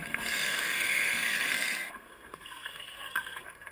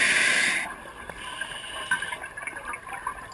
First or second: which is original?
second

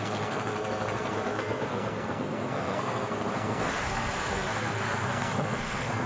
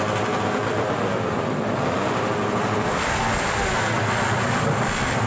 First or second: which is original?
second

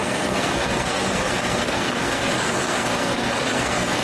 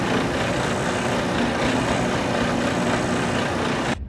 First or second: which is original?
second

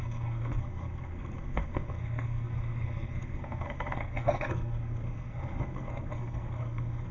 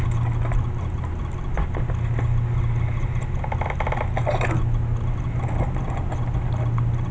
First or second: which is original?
second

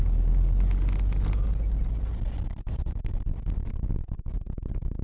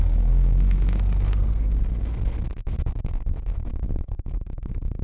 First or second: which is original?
first